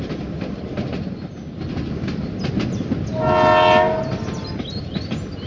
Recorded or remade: recorded